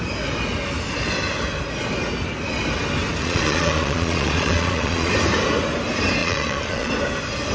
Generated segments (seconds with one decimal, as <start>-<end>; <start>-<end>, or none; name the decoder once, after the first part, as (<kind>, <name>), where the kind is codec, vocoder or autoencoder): 3.2-5.1 (vocoder, Vocos); 6.2-6.9